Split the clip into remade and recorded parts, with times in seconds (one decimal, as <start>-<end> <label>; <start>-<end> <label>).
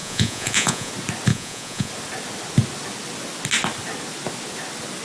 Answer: 0.0-0.9 remade; 0.9-1.3 recorded; 1.3-1.9 remade; 1.9-5.0 recorded